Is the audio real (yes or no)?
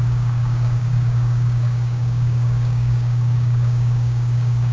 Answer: no